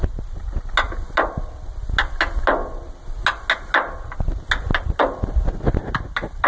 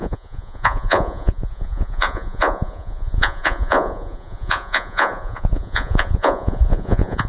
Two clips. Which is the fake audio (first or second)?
second